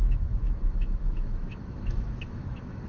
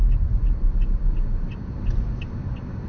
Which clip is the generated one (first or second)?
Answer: first